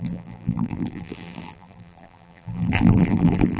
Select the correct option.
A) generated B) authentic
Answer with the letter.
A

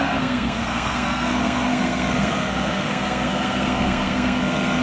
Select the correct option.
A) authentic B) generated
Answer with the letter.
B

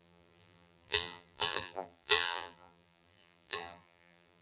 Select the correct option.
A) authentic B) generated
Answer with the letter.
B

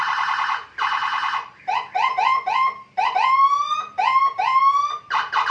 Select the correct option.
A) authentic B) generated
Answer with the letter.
A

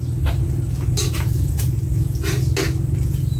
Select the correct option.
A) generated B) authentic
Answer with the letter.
B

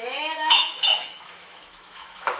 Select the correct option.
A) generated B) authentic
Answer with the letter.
A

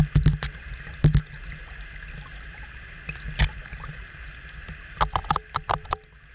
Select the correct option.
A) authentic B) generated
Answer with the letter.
A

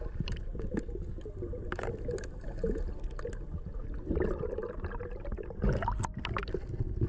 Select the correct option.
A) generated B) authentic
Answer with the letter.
B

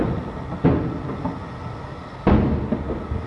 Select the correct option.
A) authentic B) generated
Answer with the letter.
A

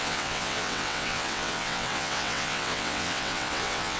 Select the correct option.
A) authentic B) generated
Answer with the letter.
B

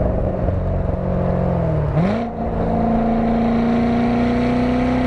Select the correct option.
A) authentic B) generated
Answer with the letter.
A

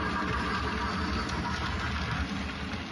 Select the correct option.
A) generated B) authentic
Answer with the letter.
B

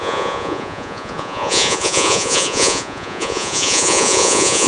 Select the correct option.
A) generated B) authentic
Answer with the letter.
A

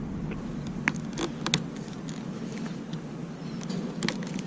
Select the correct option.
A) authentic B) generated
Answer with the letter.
A